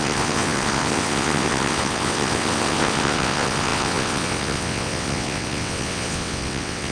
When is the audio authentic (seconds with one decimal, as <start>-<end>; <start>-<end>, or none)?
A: none